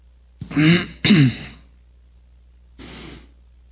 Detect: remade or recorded recorded